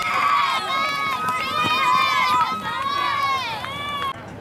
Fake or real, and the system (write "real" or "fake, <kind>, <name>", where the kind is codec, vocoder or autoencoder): real